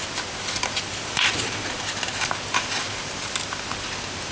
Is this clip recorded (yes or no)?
yes